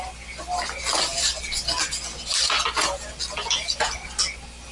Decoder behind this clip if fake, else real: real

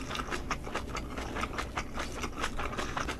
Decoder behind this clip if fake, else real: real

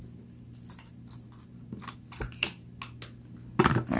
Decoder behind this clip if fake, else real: real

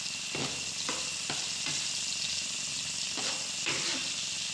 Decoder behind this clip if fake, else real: real